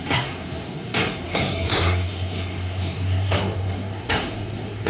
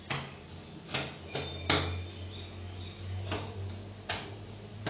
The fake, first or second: first